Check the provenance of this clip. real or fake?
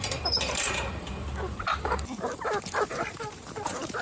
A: fake